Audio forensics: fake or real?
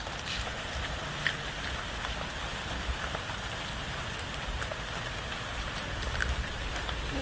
real